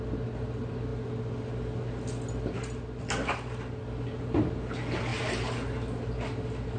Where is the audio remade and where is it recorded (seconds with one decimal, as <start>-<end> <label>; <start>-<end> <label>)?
0.0-6.8 recorded